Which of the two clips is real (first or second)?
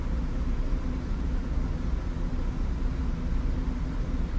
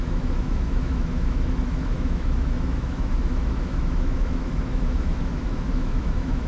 first